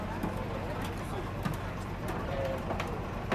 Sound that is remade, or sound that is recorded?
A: recorded